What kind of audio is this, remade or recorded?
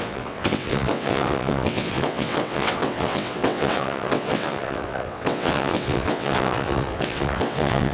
remade